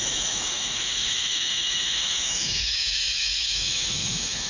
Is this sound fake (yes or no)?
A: yes